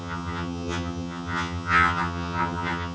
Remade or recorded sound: remade